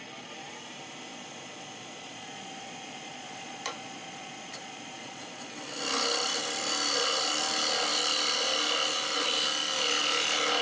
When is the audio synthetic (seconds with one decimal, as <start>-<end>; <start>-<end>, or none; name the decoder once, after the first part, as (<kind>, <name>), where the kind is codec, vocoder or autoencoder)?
1.1-5.6 (vocoder, Vocos)